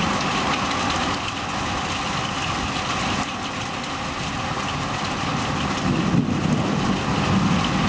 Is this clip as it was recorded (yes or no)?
yes